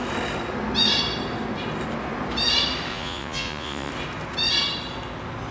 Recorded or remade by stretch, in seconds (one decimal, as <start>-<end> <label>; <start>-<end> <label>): 0.0-2.9 recorded; 2.9-3.9 remade; 3.9-5.5 recorded